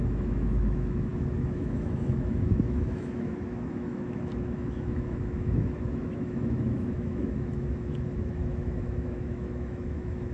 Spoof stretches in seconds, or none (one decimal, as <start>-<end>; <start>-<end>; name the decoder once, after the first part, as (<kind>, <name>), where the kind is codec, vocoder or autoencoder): 0.0-10.3 (autoencoder, DAC-VAE)